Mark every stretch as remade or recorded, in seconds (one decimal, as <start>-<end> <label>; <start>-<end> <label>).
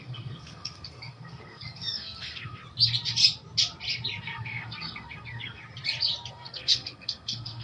0.0-2.6 remade; 2.6-4.2 recorded; 4.2-5.6 remade; 5.6-6.3 recorded; 6.3-7.6 remade